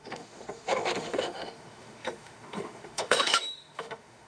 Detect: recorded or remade remade